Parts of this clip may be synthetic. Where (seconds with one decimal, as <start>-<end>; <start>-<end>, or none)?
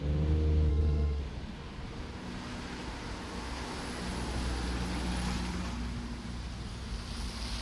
0.7-1.2